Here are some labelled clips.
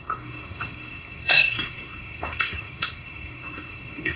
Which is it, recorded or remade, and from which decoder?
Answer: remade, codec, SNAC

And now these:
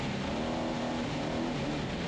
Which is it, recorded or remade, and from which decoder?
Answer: recorded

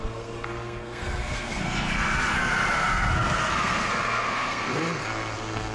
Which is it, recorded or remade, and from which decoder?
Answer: remade, codec, SNAC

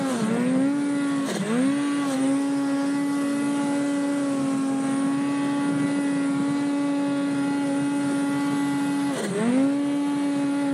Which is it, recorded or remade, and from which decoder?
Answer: recorded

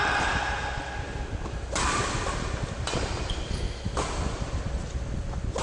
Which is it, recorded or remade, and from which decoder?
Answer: recorded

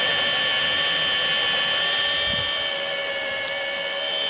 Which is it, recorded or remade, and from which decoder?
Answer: recorded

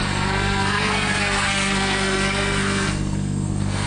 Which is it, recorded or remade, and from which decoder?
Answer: remade, codec, SNAC